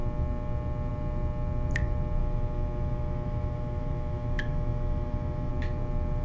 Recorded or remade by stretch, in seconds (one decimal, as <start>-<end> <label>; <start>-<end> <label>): 0.0-2.2 recorded; 2.2-5.5 remade; 5.5-6.2 recorded